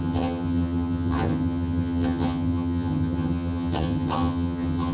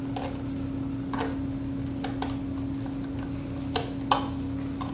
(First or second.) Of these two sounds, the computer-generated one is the first